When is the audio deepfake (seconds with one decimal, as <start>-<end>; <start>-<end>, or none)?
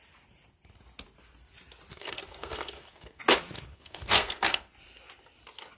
1.9-3.2; 3.7-4.7